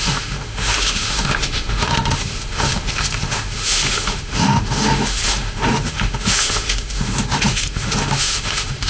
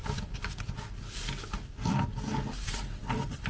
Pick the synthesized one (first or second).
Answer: first